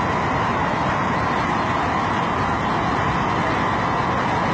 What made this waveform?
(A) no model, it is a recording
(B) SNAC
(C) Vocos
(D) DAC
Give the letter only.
A